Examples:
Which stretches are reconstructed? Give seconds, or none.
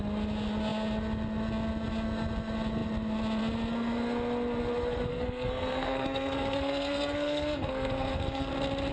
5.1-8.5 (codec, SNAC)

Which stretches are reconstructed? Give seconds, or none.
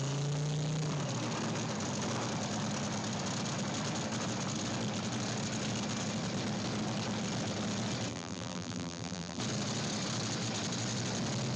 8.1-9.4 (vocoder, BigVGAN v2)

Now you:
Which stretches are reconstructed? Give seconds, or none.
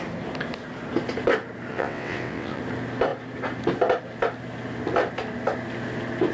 1.7-2.6 (vocoder, WaveNeXt)